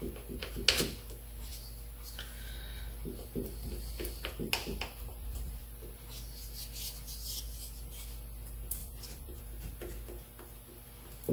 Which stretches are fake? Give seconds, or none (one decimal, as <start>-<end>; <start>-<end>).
4.6-5.6; 8.8-9.4